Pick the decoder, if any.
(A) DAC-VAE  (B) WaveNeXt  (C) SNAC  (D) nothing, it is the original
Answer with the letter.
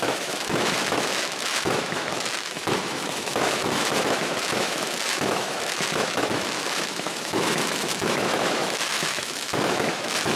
A